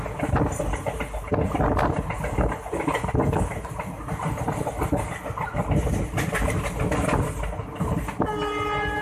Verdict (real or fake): real